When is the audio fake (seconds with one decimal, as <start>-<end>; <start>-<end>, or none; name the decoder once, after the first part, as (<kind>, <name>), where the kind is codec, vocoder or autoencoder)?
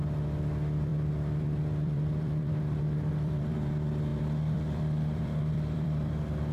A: 0.0-6.5 (vocoder, BigVGAN v2)